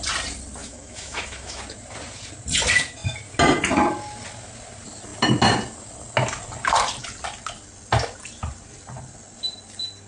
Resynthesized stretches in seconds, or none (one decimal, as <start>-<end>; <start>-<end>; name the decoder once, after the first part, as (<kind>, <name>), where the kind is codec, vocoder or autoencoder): 0.6-1.6 (autoencoder, DAC-VAE)